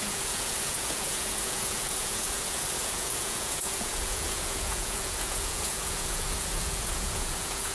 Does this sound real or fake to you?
fake